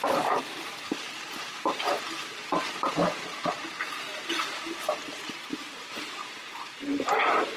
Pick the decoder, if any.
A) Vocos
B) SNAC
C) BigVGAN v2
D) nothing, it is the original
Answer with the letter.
C